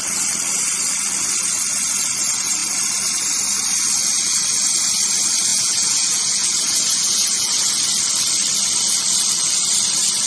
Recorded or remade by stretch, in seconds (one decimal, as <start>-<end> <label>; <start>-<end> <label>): 0.0-5.5 recorded; 5.5-7.7 remade; 7.7-10.3 recorded